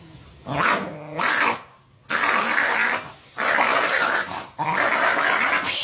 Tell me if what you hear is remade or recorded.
recorded